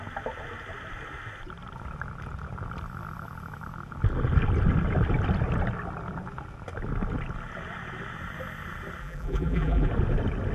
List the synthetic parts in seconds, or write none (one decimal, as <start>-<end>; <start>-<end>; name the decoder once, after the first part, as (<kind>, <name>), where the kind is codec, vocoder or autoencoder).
9.0-9.9 (vocoder, BigVGAN v2)